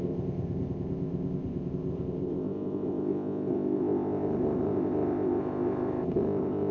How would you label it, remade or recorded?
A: remade